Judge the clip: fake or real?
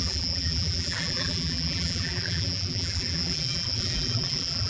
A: fake